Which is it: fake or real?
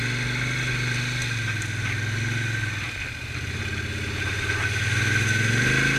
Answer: real